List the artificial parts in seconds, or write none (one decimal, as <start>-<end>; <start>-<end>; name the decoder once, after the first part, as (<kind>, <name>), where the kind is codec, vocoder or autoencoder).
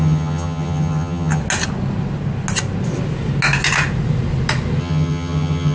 0.0-1.4 (vocoder, HiFi-GAN); 4.8-5.7